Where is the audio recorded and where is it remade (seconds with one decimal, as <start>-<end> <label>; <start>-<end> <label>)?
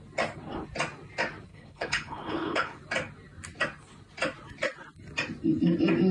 0.0-1.5 recorded; 1.5-2.8 remade; 2.8-6.1 recorded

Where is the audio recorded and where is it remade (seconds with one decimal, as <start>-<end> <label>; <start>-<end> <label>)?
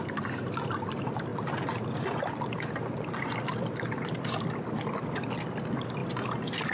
0.0-6.7 recorded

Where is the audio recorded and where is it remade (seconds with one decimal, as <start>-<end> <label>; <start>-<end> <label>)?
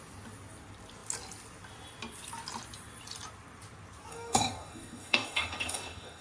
0.0-4.1 recorded; 4.1-6.2 remade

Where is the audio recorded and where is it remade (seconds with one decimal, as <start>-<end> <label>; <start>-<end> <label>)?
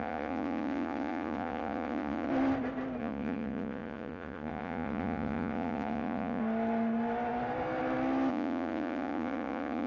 0.0-2.3 remade; 2.3-3.0 recorded; 3.0-6.4 remade; 6.4-8.3 recorded; 8.3-9.9 remade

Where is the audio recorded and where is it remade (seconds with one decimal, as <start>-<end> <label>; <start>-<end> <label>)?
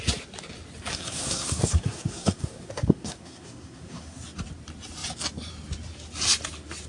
0.0-0.9 recorded; 0.9-4.2 remade; 4.2-6.9 recorded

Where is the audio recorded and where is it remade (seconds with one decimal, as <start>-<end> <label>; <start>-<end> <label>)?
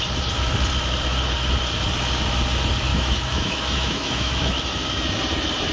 0.0-2.9 recorded; 2.9-4.6 remade; 4.6-5.7 recorded